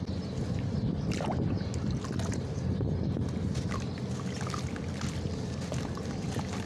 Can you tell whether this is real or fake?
real